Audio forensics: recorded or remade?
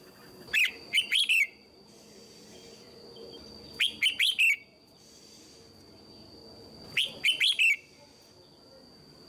recorded